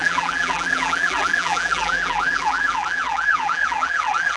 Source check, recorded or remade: remade